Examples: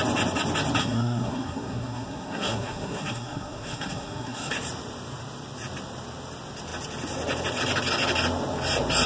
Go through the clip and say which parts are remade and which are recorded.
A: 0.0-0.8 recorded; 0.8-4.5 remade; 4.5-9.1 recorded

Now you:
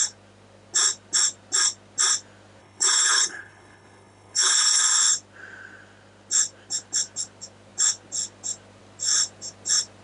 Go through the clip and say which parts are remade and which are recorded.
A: 0.0-2.6 recorded; 2.6-4.8 remade; 4.8-10.0 recorded

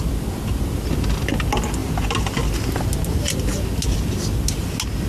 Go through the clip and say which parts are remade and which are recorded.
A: 0.0-5.1 recorded

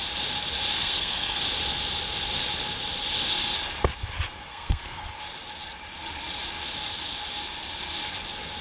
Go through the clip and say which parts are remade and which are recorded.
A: 0.0-0.7 recorded; 0.7-1.4 remade; 1.4-4.5 recorded; 4.5-5.1 remade; 5.1-8.6 recorded